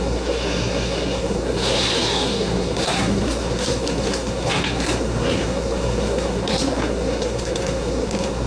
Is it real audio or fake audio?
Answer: fake